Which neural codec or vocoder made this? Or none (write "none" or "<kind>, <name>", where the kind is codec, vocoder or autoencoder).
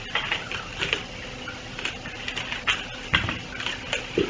none